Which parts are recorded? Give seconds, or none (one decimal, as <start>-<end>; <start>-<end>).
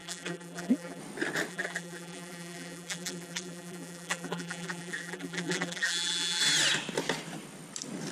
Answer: 1.0-1.5; 6.4-8.1